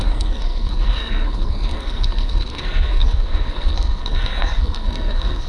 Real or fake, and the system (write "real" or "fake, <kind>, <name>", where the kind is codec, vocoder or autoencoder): fake, codec, SNAC